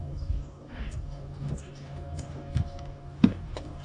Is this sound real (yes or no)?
no